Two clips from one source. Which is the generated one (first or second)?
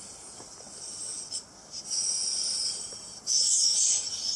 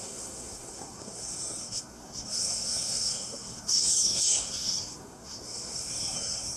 second